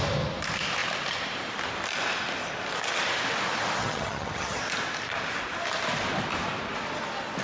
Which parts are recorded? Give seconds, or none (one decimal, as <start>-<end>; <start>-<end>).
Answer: 0.0-3.8; 4.6-7.4